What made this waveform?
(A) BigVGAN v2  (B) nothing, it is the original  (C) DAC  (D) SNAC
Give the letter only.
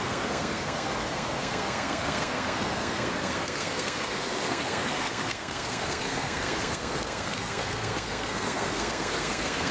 D